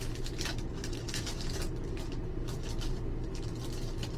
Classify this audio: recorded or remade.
recorded